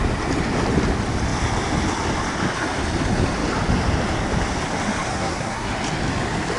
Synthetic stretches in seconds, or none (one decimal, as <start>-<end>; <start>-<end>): 5.1-5.7